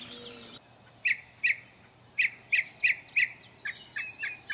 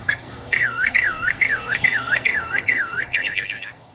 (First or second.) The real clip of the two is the first